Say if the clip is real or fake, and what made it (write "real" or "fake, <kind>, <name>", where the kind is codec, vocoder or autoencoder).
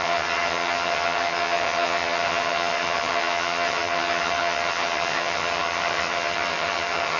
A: fake, vocoder, HiFi-GAN